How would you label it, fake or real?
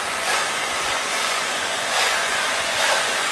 fake